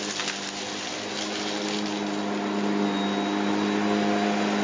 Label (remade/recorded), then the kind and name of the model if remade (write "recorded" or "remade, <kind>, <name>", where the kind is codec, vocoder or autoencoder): recorded